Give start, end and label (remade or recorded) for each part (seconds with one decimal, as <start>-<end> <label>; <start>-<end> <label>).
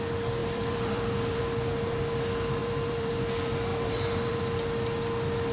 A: 0.0-0.4 recorded; 0.4-1.4 remade; 1.4-2.6 recorded; 2.6-3.1 remade; 3.1-3.7 recorded; 3.7-4.4 remade; 4.4-5.5 recorded